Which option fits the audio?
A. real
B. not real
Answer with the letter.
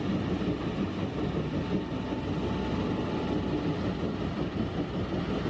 A